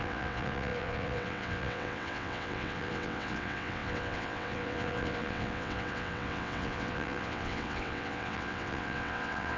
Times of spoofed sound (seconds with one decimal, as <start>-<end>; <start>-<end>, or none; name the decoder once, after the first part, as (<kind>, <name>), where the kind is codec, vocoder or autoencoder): 0.0-9.6 (vocoder, WaveNeXt)